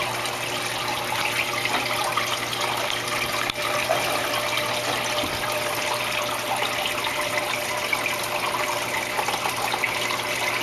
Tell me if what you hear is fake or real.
real